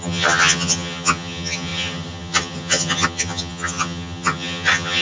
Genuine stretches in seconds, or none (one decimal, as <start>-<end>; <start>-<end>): none